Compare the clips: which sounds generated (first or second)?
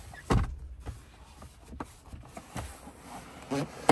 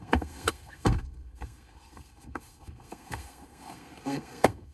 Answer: second